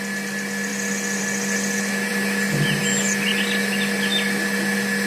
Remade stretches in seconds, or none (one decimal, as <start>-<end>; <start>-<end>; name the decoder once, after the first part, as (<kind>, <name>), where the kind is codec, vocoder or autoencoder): none